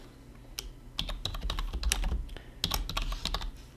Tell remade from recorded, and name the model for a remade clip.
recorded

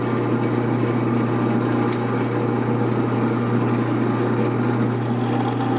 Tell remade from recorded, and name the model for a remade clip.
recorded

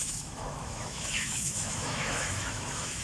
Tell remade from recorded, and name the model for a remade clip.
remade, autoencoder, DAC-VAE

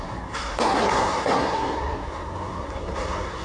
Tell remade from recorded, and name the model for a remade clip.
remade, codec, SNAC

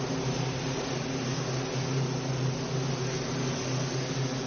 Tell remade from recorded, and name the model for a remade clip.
recorded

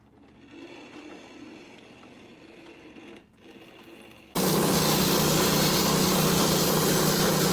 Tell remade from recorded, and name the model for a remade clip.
recorded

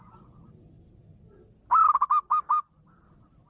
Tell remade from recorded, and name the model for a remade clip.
recorded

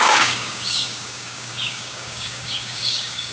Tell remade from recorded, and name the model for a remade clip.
remade, codec, DAC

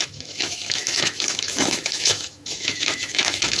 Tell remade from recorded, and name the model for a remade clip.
remade, autoencoder, DAC-VAE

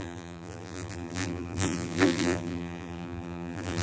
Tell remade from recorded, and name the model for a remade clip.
remade, vocoder, BigVGAN v2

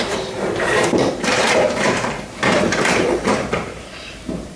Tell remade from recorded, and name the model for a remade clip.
remade, vocoder, BigVGAN v2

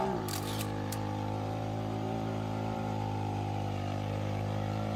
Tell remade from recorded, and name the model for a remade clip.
remade, vocoder, BigVGAN v2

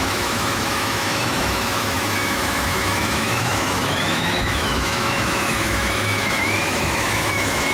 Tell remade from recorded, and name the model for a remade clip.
remade, autoencoder, DAC-VAE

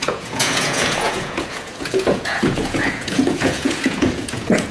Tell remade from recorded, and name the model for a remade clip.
remade, vocoder, Vocos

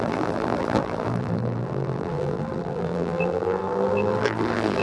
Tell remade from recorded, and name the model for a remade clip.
remade, vocoder, BigVGAN v2